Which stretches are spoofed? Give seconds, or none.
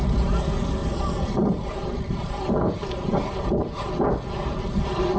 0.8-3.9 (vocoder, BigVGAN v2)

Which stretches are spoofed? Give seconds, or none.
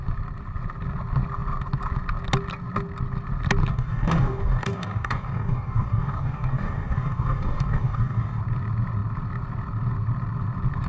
3.7-8.4 (codec, DAC)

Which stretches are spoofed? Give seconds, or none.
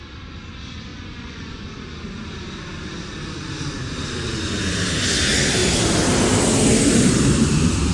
0.9-1.7 (vocoder, Vocos)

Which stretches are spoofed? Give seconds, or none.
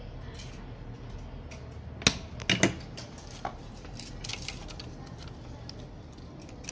3.5-4.1 (vocoder, BigVGAN v2)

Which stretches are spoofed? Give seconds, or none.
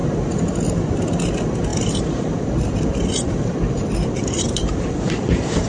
0.0-0.9 (vocoder, BigVGAN v2); 1.7-5.1